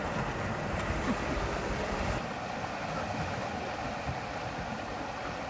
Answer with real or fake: real